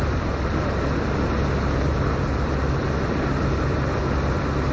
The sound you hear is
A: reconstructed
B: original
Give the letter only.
B